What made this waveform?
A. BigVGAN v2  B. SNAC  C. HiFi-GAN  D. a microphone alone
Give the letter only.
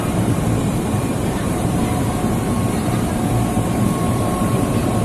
A